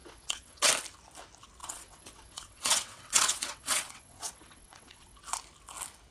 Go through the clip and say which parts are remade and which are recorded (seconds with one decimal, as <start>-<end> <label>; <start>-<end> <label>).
0.0-0.7 remade; 0.7-1.6 recorded; 1.6-5.2 remade; 5.2-6.1 recorded